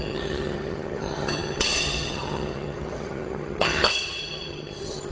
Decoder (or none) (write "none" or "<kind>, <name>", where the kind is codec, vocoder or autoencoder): vocoder, HiFi-GAN